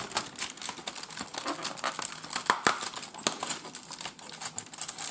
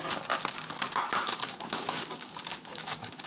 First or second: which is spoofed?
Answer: second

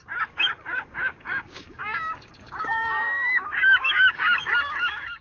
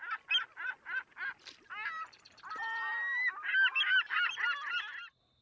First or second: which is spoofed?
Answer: first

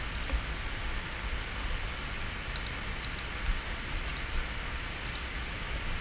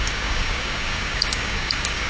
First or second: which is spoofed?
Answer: second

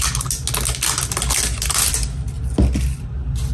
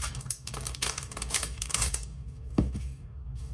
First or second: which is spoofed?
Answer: second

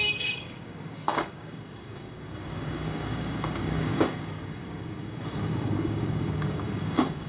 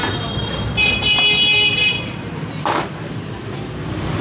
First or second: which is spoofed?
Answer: first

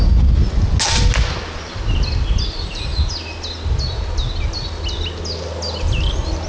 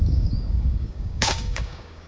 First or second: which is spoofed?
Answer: second